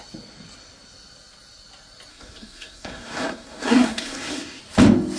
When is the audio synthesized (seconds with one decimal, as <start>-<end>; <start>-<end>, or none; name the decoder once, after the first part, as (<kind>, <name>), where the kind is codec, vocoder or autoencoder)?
2.1-4.6 (codec, SNAC)